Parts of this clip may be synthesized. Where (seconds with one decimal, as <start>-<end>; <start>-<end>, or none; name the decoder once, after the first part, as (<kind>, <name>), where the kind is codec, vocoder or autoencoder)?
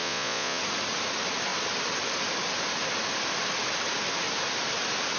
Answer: 0.0-0.6 (vocoder, Vocos)